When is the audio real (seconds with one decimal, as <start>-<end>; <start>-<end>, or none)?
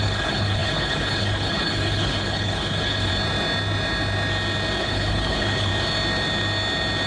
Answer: 3.1-4.8; 5.7-7.1